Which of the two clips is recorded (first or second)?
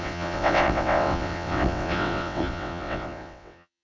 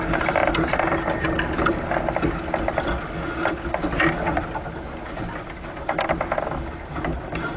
second